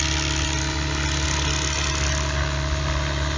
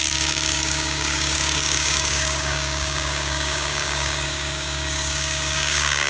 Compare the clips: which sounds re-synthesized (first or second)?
second